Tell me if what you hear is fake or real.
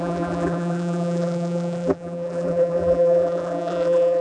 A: fake